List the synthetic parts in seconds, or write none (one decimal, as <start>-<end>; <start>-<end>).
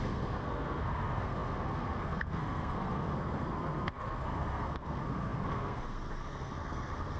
0.0-7.2